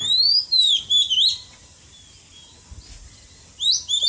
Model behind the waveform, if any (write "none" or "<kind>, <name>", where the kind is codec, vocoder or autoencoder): none